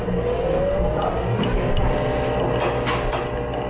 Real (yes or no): yes